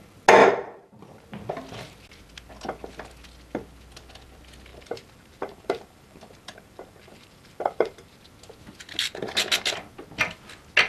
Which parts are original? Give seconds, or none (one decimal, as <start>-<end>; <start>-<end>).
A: 0.0-0.4; 1.0-4.7; 8.1-10.9